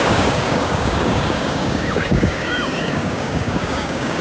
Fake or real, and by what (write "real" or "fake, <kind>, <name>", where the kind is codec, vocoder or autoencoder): fake, codec, DAC